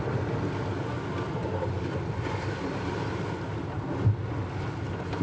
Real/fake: real